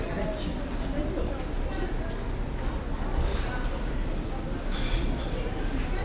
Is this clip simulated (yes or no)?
no